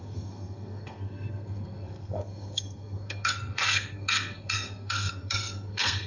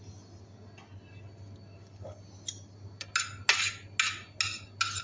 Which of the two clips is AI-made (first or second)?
first